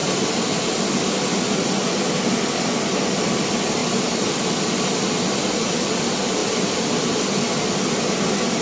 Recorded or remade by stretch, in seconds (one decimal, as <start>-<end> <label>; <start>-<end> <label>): 0.0-8.6 recorded